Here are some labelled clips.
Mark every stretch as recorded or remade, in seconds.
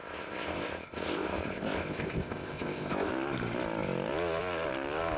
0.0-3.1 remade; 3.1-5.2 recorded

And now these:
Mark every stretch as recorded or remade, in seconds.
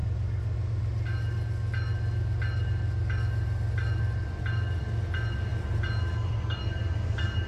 0.0-7.5 recorded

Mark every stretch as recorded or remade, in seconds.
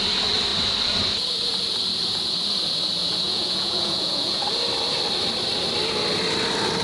0.0-3.0 recorded; 3.0-4.4 remade; 4.4-6.8 recorded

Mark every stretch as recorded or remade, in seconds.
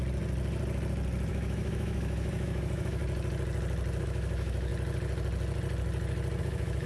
0.0-1.3 recorded; 1.3-3.0 remade; 3.0-4.0 recorded; 4.0-4.7 remade; 4.7-6.4 recorded; 6.4-6.9 remade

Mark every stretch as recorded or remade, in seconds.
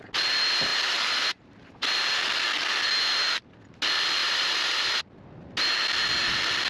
0.0-0.7 recorded; 0.7-1.9 remade; 1.9-4.2 recorded; 4.2-5.0 remade; 5.0-6.7 recorded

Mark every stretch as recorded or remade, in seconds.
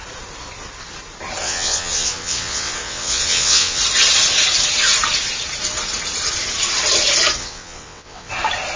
0.0-1.4 recorded; 1.4-3.8 remade; 3.8-7.4 recorded; 7.4-8.3 remade; 8.3-8.8 recorded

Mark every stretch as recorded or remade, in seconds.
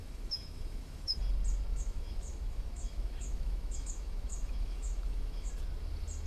0.0-1.2 remade; 1.2-1.7 recorded; 1.7-5.5 remade; 5.5-6.3 recorded